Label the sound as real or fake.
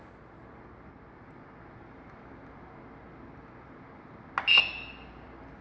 real